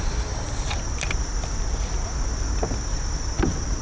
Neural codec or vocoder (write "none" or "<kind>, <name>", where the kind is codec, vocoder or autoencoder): none